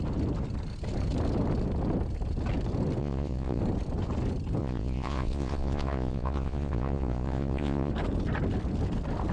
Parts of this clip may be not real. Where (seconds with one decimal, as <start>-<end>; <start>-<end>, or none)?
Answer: 3.0-3.6; 4.6-7.9

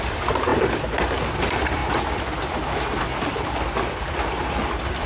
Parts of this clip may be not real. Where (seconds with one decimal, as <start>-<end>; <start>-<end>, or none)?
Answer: 0.0-1.8; 3.2-5.1

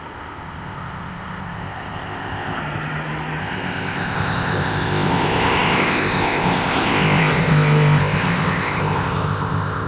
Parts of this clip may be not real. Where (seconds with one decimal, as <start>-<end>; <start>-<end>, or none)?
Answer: 0.0-2.6; 3.4-9.9

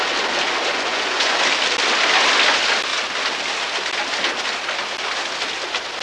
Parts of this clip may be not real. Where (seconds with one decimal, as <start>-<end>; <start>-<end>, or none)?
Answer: 0.7-1.4

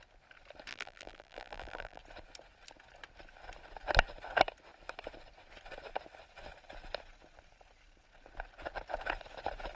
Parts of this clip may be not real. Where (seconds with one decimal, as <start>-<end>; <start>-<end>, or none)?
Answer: 0.7-2.0

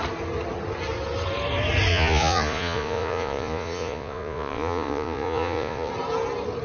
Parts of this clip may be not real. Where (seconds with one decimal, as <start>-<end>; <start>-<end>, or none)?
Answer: 1.9-5.9

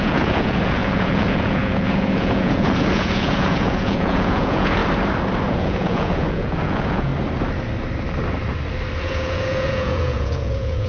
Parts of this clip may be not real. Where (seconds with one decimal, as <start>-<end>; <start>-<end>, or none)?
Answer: 0.0-4.8; 5.5-7.1; 9.0-10.9